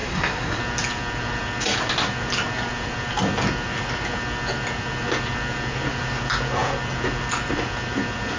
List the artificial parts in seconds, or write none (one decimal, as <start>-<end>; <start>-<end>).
0.0-0.6